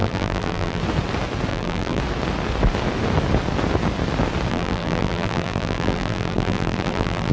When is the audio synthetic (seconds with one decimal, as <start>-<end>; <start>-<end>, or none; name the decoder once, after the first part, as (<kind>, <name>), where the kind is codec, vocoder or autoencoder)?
0.0-0.8 (vocoder, BigVGAN v2); 1.5-2.0; 4.5-7.3